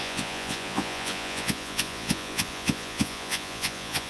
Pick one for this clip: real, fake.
fake